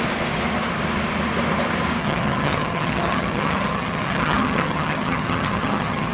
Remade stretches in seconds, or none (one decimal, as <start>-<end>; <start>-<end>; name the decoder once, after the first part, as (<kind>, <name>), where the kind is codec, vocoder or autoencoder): 2.0-6.1 (vocoder, HiFi-GAN)